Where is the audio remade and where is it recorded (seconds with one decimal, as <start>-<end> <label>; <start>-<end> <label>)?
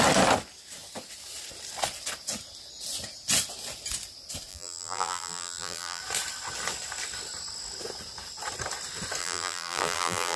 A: 0.0-4.5 recorded; 4.5-6.0 remade; 6.0-9.2 recorded; 9.2-10.4 remade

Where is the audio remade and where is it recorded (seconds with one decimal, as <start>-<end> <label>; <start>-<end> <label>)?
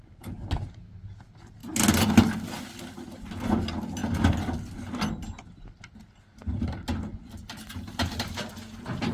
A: 0.0-1.6 recorded; 1.6-2.1 remade; 2.1-9.1 recorded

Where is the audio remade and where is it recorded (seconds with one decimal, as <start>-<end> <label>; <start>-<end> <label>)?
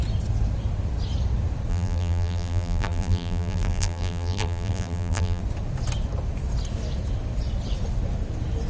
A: 0.0-1.7 recorded; 1.7-5.4 remade; 5.4-8.7 recorded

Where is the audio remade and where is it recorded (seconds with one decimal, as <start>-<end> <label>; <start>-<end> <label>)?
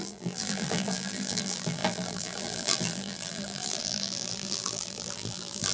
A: 0.0-5.7 remade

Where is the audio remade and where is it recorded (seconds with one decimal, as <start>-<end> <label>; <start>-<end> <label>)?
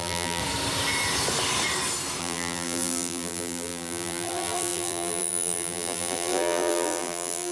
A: 0.0-0.4 remade; 0.4-2.2 recorded; 2.2-7.5 remade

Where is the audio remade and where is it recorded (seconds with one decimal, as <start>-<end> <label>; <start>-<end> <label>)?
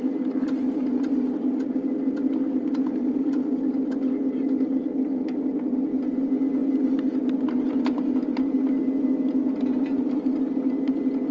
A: 0.0-11.3 recorded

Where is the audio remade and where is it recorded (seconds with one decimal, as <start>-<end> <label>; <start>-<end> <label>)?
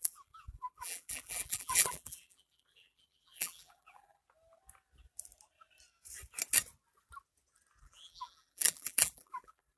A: 0.0-4.2 remade; 4.2-7.8 recorded; 7.8-9.8 remade